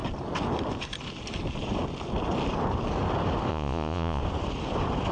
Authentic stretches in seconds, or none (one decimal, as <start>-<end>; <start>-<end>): 0.0-3.5; 4.2-5.1